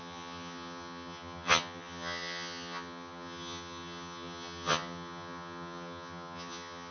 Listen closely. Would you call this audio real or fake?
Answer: fake